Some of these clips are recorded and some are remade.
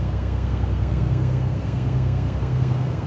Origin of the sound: remade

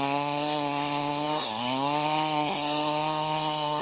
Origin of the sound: remade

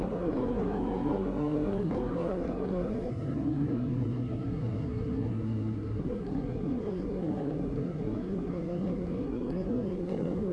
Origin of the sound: remade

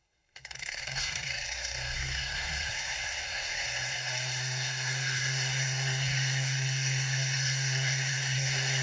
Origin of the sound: remade